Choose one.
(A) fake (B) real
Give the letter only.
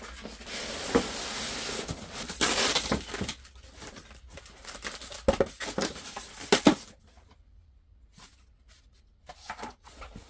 B